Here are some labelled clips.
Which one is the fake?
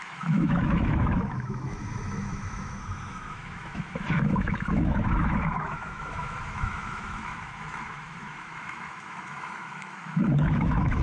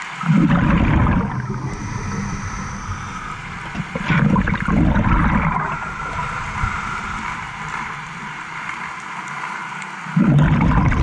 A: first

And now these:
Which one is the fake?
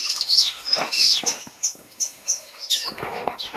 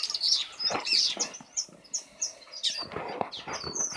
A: first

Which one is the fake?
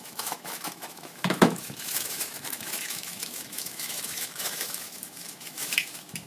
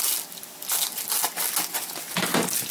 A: first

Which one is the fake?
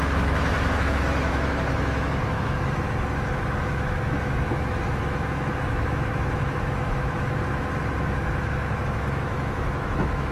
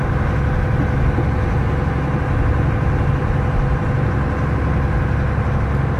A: first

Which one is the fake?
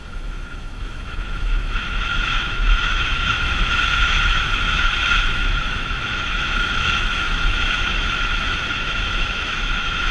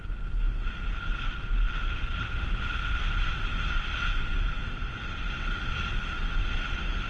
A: first